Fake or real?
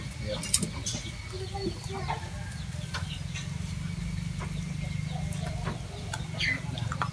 real